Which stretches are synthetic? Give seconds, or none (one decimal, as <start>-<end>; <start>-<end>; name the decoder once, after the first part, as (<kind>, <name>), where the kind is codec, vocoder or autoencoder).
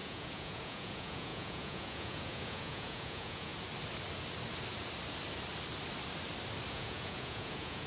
0.0-3.5 (vocoder, Vocos); 6.7-7.9